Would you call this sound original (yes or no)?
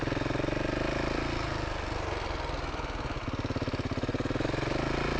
yes